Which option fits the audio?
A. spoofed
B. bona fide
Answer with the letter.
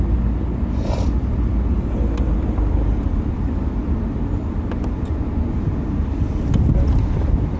B